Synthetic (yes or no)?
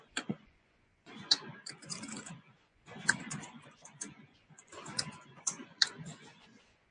yes